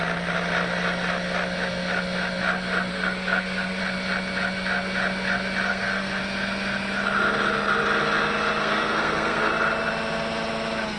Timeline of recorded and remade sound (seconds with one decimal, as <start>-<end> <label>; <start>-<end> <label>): 0.0-2.9 recorded; 2.9-3.8 remade; 3.8-5.7 recorded; 5.7-6.2 remade; 6.2-8.6 recorded; 8.6-9.5 remade; 9.5-11.0 recorded